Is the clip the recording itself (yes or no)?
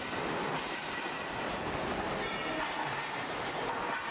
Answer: yes